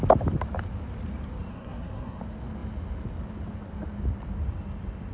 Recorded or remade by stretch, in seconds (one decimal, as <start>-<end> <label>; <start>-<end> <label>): 0.0-1.5 recorded; 1.5-2.2 remade; 2.2-5.1 recorded